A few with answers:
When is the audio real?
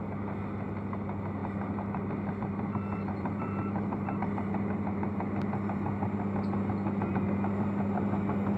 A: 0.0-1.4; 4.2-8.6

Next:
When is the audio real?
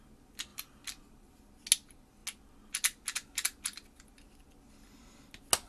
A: 0.0-0.5; 1.3-5.7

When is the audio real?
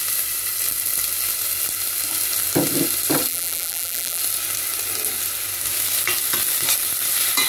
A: 0.0-3.3; 4.2-7.5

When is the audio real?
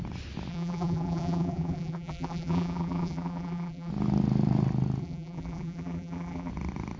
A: 0.0-0.5; 3.9-5.0; 6.5-7.0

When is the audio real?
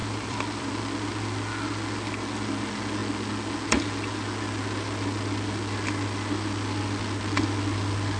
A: 0.7-8.2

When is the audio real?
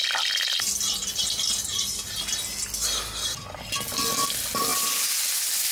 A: 0.0-5.7